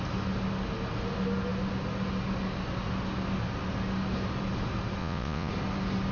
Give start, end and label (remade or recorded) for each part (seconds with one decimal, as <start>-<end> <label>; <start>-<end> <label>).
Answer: 0.0-5.0 recorded; 5.0-5.5 remade; 5.5-6.1 recorded